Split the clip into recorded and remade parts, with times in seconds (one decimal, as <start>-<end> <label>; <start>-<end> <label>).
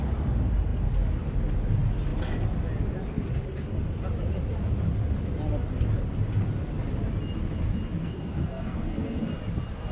0.0-8.0 recorded; 8.0-9.2 remade; 9.2-9.9 recorded